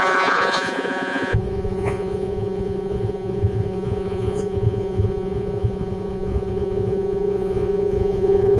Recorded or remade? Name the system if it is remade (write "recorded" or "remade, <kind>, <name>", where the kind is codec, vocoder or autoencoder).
remade, vocoder, Vocos